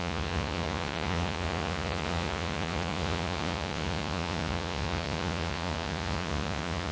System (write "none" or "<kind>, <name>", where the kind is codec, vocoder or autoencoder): vocoder, Vocos